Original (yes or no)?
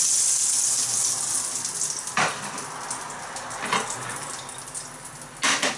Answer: yes